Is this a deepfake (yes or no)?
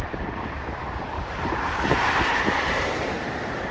yes